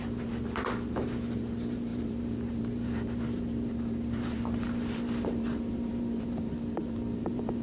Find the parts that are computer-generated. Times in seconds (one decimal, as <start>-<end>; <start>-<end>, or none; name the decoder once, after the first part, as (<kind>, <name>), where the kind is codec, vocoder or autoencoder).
0.0-7.6 (vocoder, BigVGAN v2)